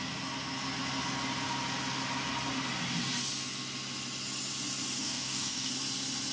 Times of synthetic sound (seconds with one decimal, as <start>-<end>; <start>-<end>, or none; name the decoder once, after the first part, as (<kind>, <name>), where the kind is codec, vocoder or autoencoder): 5.0-5.7 (codec, DAC)